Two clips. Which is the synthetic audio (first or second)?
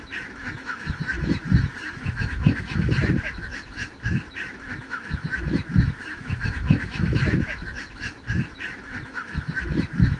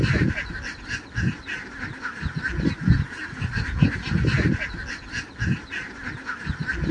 first